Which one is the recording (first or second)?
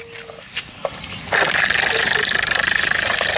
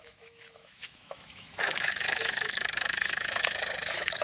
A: first